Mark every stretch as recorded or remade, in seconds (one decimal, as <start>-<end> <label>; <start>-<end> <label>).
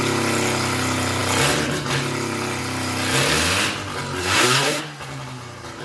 0.0-4.2 recorded; 4.2-4.8 remade; 4.8-5.8 recorded